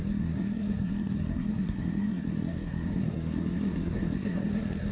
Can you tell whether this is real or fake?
fake